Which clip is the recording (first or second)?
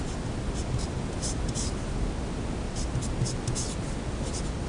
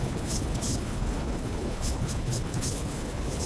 first